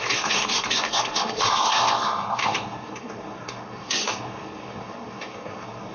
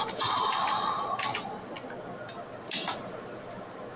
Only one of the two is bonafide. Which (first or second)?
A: second